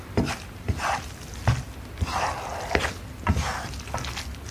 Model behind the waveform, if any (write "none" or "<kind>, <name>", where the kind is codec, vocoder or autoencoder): none